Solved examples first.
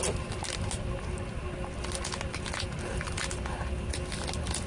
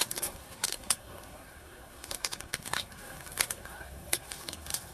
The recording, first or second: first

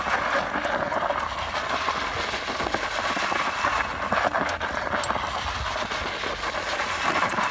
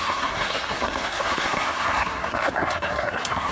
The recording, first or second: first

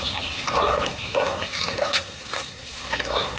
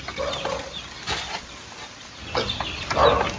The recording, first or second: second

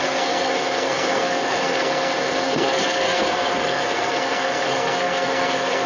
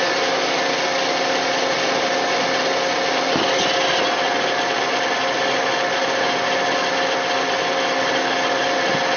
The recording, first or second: second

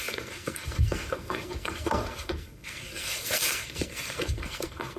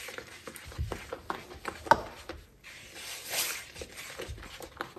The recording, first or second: second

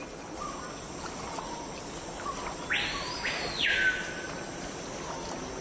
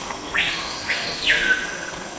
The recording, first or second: first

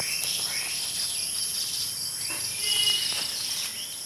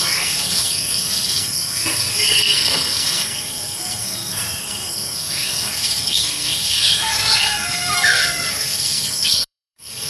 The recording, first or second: first